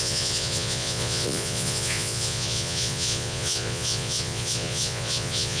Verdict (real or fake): fake